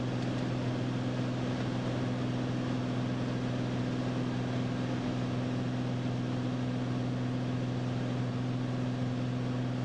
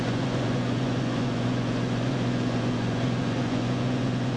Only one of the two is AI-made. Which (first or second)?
second